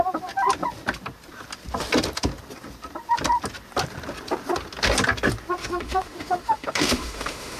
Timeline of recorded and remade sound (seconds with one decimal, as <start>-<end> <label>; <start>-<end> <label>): 0.0-5.6 recorded; 5.6-7.6 remade